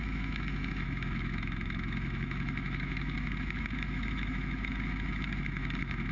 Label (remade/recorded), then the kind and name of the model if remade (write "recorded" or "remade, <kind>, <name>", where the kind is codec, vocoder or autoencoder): remade, autoencoder, DAC-VAE